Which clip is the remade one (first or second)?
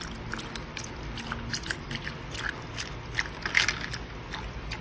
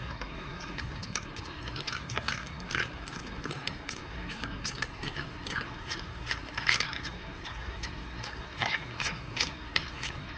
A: second